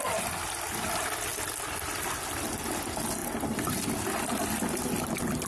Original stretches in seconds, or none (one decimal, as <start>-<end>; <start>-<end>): 0.0-5.5